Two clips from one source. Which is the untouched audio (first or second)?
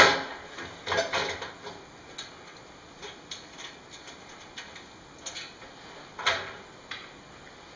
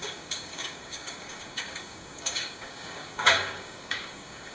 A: first